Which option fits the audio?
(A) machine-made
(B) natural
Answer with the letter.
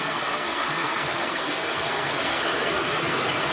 A